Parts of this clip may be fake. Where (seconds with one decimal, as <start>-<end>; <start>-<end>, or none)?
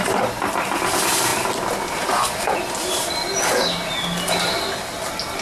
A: 1.3-3.9